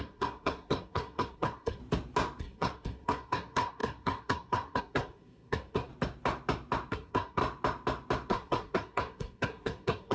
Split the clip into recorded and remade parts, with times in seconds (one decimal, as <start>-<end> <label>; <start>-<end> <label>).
0.0-1.8 remade; 1.8-2.4 recorded; 2.4-5.9 remade; 5.9-6.9 recorded; 6.9-7.4 remade; 7.4-8.3 recorded; 8.3-10.1 remade